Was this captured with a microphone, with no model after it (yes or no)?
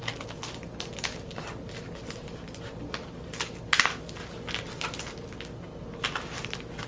yes